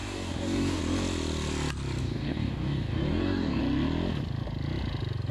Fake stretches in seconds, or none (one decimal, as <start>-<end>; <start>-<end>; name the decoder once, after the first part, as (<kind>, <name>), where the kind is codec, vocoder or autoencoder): 0.0-0.8 (codec, DAC); 2.0-3.6